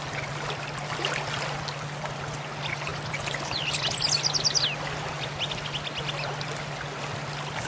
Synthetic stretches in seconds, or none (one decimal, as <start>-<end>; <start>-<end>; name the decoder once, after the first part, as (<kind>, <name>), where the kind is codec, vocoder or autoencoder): none